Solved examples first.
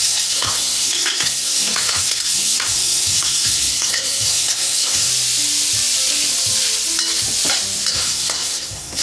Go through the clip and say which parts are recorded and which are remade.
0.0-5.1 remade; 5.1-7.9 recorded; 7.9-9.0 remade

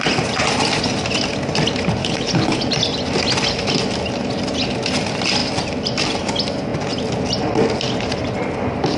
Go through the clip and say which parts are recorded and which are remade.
0.0-2.0 recorded; 2.0-2.6 remade; 2.6-9.0 recorded

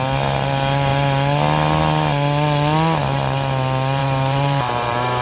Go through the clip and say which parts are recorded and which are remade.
0.0-4.0 recorded; 4.0-5.2 remade

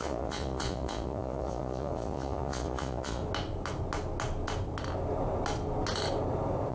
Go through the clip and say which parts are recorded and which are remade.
0.0-3.2 remade; 3.2-6.7 recorded

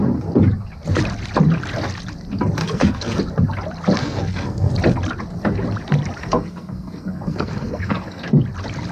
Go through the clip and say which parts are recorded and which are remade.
0.0-2.6 recorded; 2.6-3.2 remade; 3.2-4.0 recorded; 4.0-4.7 remade; 4.7-6.2 recorded; 6.2-8.2 remade; 8.2-8.9 recorded

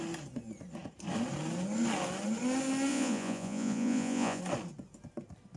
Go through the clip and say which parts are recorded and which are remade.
0.0-2.9 recorded; 2.9-4.4 remade; 4.4-5.6 recorded

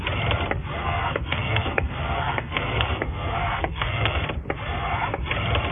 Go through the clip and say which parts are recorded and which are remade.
0.0-0.8 recorded; 0.8-4.2 remade; 4.2-5.7 recorded